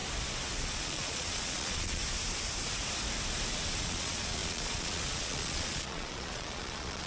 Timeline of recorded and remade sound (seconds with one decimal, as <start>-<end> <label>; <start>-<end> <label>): 0.0-0.6 recorded; 0.6-2.0 remade; 2.0-3.8 recorded; 3.8-7.1 remade